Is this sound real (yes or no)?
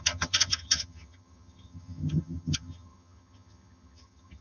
no